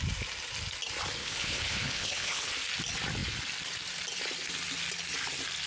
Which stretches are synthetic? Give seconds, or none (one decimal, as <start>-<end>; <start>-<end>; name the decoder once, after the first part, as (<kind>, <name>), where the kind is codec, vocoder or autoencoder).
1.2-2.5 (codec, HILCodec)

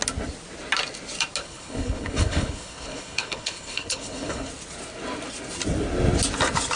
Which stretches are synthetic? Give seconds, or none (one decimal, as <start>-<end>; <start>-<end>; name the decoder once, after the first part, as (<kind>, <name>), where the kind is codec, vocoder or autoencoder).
1.4-4.5 (codec, HILCodec)

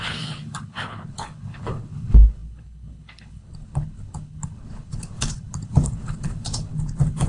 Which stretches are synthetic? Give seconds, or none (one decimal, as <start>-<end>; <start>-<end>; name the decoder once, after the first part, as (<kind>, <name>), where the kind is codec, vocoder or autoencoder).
0.0-7.3 (codec, HILCodec)

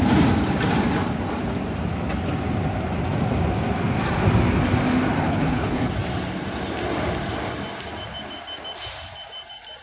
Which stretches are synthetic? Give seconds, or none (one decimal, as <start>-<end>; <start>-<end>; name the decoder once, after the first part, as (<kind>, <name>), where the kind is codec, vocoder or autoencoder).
5.2-5.9 (codec, HILCodec)

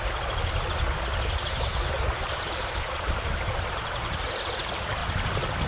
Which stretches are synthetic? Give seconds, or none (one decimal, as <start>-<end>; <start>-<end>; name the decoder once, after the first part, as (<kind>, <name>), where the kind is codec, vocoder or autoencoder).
none